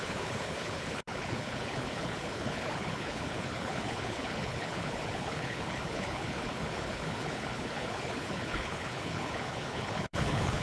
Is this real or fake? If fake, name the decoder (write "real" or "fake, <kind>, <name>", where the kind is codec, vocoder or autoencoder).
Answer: fake, codec, HILCodec